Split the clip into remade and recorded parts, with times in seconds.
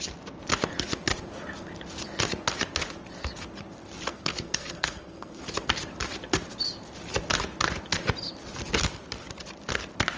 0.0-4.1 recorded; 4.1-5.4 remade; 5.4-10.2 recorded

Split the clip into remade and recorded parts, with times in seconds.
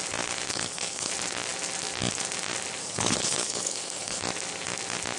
0.0-0.5 recorded; 0.5-1.1 remade; 1.1-2.8 recorded; 2.8-4.2 remade; 4.2-5.2 recorded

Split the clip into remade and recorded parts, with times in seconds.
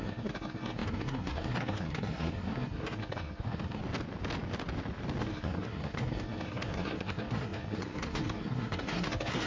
0.0-3.8 remade; 3.8-5.2 recorded; 5.2-9.5 remade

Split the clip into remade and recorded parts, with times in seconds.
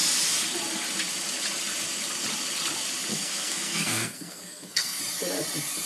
0.0-3.1 recorded; 3.1-5.0 remade; 5.0-5.9 recorded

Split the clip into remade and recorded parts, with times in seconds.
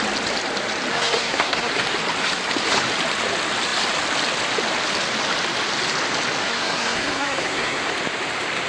0.0-0.9 recorded; 0.9-1.7 remade; 1.7-6.4 recorded; 6.4-7.9 remade; 7.9-8.7 recorded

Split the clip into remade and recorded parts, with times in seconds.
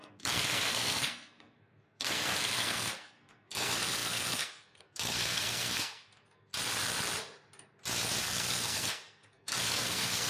0.0-6.5 remade; 6.5-8.2 recorded; 8.2-10.3 remade